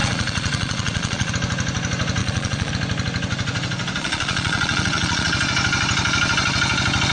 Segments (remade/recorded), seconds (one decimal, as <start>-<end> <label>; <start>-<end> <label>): 0.0-1.3 remade; 1.3-2.2 recorded; 2.2-2.7 remade; 2.7-4.0 recorded; 4.0-5.3 remade; 5.3-7.1 recorded